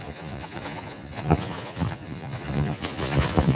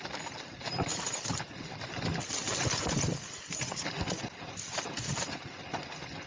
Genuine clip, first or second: second